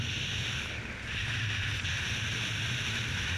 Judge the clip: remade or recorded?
recorded